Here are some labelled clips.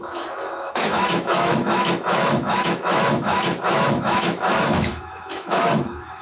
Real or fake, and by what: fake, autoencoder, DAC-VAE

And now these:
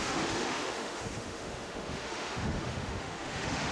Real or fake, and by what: fake, autoencoder, DAC-VAE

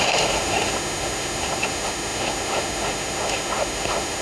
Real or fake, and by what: fake, autoencoder, DAC-VAE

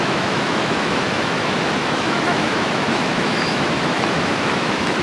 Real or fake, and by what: fake, autoencoder, DAC-VAE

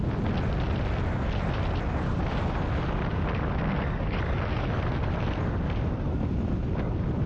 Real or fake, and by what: real